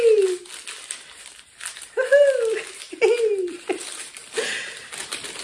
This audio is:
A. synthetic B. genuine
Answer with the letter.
B